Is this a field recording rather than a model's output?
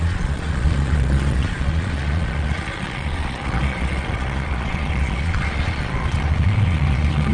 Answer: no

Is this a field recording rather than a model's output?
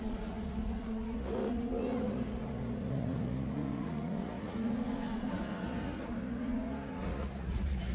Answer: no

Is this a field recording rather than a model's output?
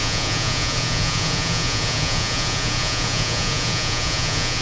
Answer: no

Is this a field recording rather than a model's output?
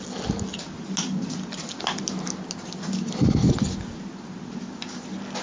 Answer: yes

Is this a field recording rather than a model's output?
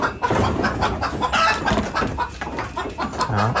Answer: yes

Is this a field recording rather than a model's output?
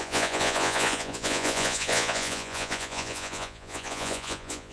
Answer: no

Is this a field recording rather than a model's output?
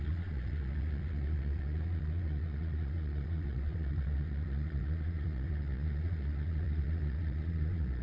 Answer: no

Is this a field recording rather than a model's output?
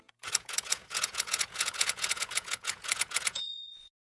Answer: no